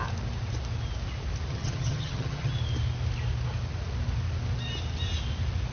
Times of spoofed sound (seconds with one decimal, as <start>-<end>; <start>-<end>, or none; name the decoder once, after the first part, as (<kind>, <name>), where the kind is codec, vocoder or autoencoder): 1.5-2.6 (vocoder, HiFi-GAN)